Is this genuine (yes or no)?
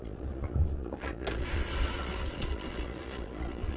no